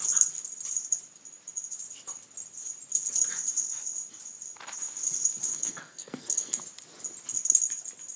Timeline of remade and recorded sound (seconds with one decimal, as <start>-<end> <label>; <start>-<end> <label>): 0.0-5.5 recorded; 5.5-6.6 remade; 6.6-8.2 recorded

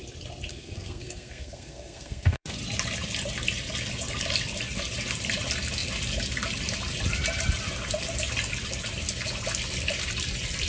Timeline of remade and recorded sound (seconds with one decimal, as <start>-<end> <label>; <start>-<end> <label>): 0.0-0.5 recorded; 0.5-2.6 remade; 2.6-10.7 recorded

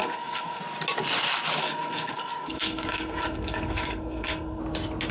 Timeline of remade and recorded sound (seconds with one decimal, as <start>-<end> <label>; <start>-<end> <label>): 0.0-0.6 remade; 0.6-1.6 recorded; 1.6-4.6 remade; 4.6-5.1 recorded

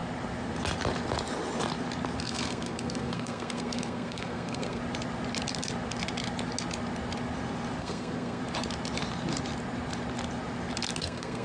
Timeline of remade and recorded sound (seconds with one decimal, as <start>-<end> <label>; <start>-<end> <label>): 0.0-2.2 recorded; 2.2-4.8 remade; 4.8-7.8 recorded; 7.8-8.4 remade; 8.4-11.0 recorded; 11.0-11.4 remade

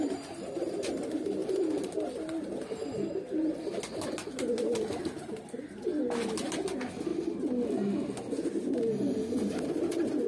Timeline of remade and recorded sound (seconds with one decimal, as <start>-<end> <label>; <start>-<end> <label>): 0.0-10.3 recorded

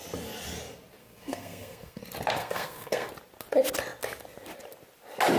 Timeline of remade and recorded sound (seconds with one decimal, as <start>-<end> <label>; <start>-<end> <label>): 0.0-1.0 recorded; 1.0-2.0 remade; 2.0-2.4 recorded; 2.4-3.1 remade; 3.1-5.4 recorded

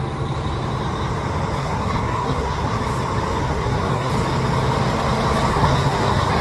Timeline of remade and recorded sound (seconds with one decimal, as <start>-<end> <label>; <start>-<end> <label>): 0.0-1.6 recorded; 1.6-2.8 remade; 2.8-3.4 recorded; 3.4-4.1 remade; 4.1-5.5 recorded; 5.5-6.4 remade

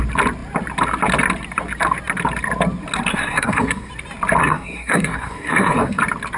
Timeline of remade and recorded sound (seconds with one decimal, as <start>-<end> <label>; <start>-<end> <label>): 0.0-3.1 recorded; 3.1-3.9 remade; 3.9-4.4 recorded; 4.4-6.0 remade; 6.0-6.4 recorded